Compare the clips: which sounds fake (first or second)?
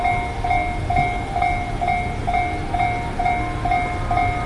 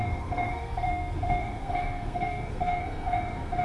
second